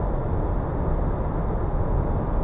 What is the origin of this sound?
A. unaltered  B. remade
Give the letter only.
A